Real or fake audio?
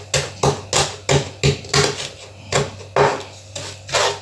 real